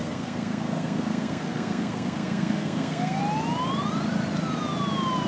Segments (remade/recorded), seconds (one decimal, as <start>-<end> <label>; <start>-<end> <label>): 0.0-3.2 remade; 3.2-5.3 recorded